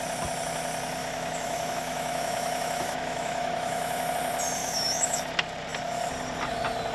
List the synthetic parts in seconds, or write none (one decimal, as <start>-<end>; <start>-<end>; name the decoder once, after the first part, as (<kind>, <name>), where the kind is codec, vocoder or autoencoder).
1.0-4.1 (autoencoder, DAC-VAE); 4.6-5.2